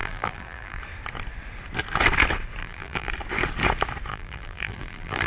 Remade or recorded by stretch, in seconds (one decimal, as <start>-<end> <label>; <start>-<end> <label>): 0.0-0.8 remade; 0.8-2.6 recorded; 2.6-3.1 remade; 3.1-4.1 recorded; 4.1-5.3 remade